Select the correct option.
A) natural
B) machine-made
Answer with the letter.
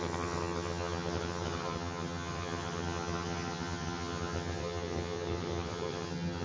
B